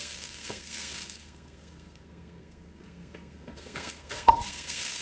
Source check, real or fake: fake